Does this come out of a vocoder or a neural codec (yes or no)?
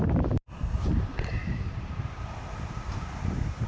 yes